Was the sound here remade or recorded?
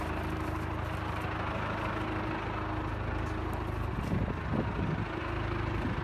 recorded